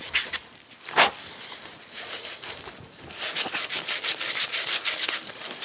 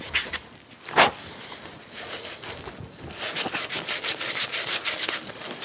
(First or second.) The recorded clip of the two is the second